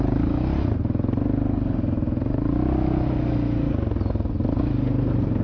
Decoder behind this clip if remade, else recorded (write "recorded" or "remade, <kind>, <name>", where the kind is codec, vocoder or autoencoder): recorded